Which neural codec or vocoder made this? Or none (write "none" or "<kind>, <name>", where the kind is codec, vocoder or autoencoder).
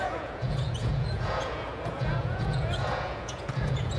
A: vocoder, Vocos